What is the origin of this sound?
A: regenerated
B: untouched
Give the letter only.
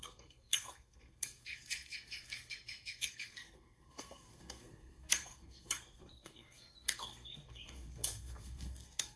A